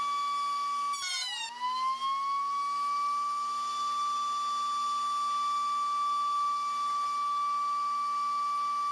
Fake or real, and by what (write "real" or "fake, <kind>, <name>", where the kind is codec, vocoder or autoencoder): real